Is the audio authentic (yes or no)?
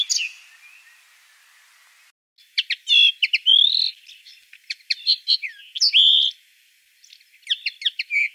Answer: yes